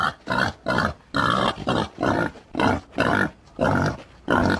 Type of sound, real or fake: real